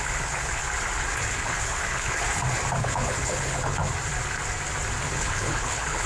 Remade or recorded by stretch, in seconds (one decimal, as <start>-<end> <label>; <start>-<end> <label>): 0.0-0.6 remade; 0.6-1.3 recorded; 1.3-2.2 remade; 2.2-2.8 recorded; 2.8-3.8 remade; 3.8-5.0 recorded; 5.0-6.1 remade